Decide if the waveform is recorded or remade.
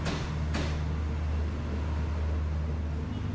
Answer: recorded